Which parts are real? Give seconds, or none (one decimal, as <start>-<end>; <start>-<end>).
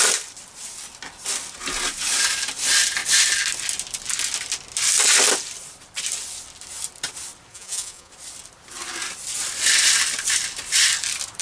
0.0-7.5; 8.1-11.4